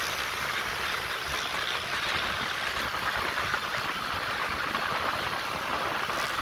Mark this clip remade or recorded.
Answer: remade